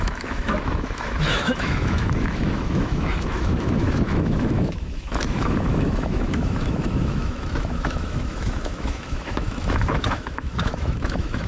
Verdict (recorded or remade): remade